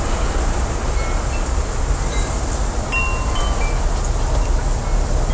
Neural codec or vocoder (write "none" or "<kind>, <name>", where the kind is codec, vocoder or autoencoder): none